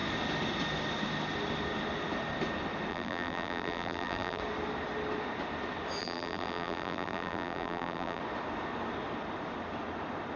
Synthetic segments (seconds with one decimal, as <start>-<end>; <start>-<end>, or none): 2.9-4.4; 6.0-8.2